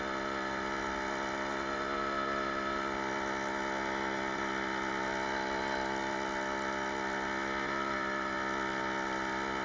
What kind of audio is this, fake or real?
real